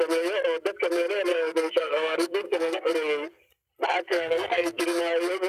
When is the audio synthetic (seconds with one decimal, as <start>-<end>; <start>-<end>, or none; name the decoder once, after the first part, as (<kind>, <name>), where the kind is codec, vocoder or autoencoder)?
1.3-2.9 (codec, SNAC); 4.1-4.8